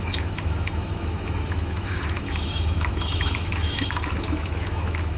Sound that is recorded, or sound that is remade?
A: remade